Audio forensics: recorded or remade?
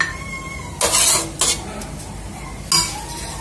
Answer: recorded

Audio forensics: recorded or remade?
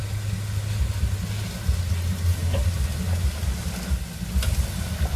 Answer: recorded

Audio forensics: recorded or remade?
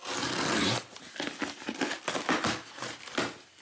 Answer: recorded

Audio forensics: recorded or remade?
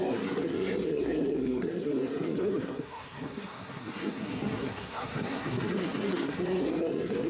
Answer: remade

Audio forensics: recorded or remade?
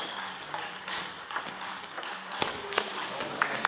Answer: remade